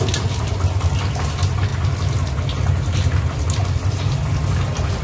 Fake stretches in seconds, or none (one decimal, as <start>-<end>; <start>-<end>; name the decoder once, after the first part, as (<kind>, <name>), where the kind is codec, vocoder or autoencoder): none